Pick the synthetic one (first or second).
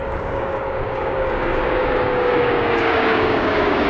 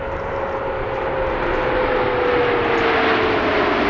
first